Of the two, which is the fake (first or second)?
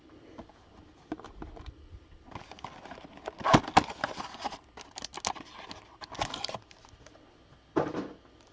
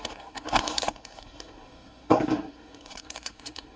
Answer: second